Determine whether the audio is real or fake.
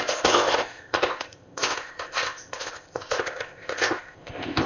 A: fake